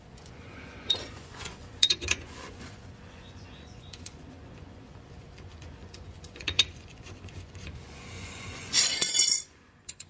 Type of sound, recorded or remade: remade